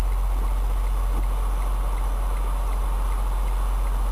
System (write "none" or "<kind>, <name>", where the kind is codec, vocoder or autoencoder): none